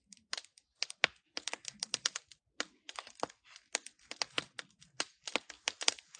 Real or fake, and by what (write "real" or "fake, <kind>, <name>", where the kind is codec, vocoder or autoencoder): real